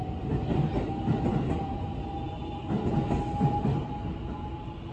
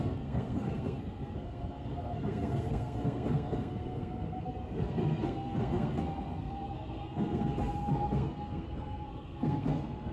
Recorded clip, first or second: first